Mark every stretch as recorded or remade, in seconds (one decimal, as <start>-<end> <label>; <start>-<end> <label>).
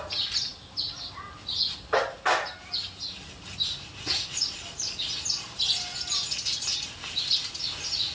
0.0-8.1 recorded